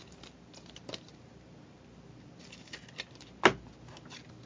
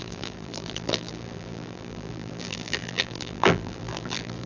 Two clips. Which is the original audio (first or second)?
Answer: first